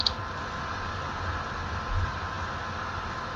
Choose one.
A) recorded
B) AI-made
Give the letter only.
A